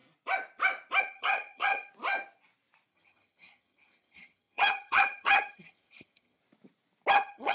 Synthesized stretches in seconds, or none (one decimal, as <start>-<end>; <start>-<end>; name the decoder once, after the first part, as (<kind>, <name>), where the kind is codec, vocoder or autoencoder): 1.0-1.9 (vocoder, HiFi-GAN); 2.9-6.4; 7.1-7.5